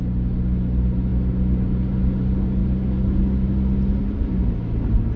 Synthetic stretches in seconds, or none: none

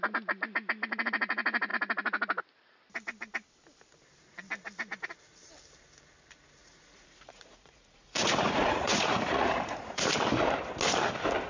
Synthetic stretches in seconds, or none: 6.6-10.0 (vocoder, Vocos)

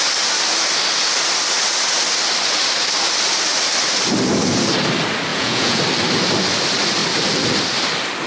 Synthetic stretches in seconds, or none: 5.3-5.8 (vocoder, Vocos)

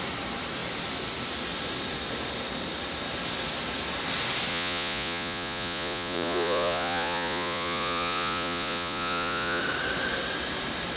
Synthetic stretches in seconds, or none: 4.5-9.6 (vocoder, Vocos)

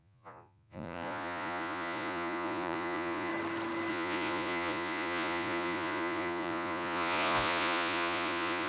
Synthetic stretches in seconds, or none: 0.0-3.3 (vocoder, Vocos); 3.9-8.7

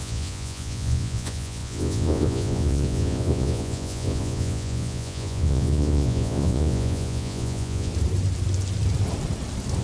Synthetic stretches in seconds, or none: 0.0-7.9 (vocoder, Vocos)

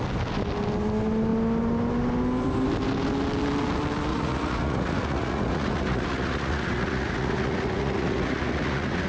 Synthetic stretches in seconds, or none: 4.1-9.1 (vocoder, Vocos)

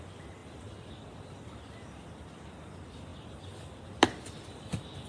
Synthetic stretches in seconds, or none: none